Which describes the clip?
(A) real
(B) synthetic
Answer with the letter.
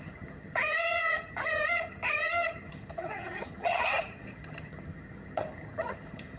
B